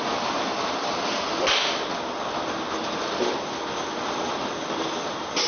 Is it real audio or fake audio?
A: real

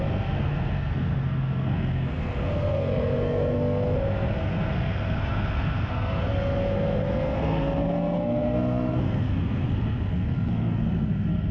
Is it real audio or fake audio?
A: fake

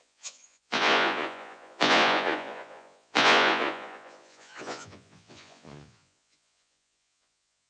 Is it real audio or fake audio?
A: fake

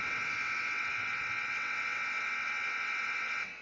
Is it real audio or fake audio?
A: fake